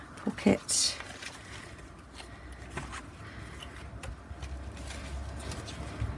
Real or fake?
real